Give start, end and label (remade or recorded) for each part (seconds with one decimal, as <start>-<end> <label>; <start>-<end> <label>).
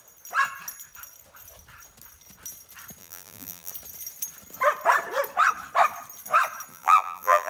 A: 0.0-3.0 recorded; 3.0-3.7 remade; 3.7-6.7 recorded; 6.7-7.5 remade